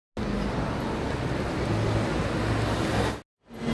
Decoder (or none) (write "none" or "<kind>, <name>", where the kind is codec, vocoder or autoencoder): none